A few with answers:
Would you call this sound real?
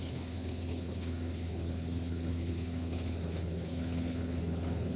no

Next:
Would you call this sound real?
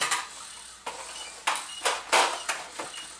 yes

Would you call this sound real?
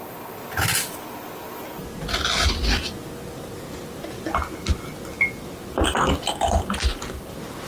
yes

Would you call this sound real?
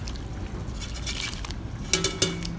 yes